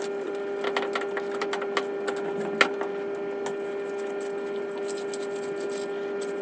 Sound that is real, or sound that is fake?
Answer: real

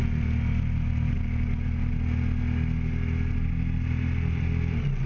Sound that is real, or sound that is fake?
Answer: real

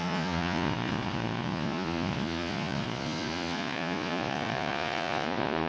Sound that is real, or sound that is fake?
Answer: fake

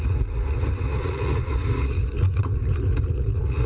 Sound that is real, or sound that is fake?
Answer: fake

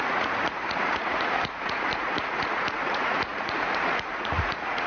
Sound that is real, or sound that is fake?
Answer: fake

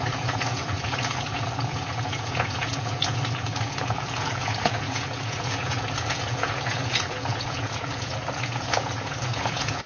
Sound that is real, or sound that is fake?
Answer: fake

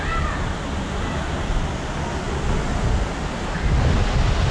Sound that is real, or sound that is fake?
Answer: real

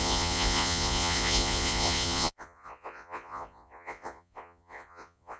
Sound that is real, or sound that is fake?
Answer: fake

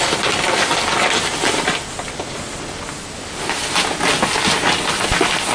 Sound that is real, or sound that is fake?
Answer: real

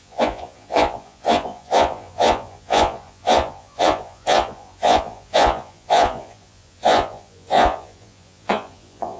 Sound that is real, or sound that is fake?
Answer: fake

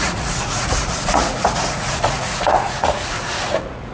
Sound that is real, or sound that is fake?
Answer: fake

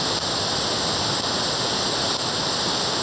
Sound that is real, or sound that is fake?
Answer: real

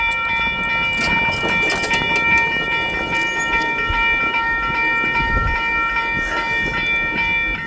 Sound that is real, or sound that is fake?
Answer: real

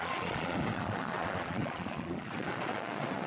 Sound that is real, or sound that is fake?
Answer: fake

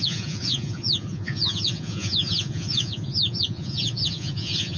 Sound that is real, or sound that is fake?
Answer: fake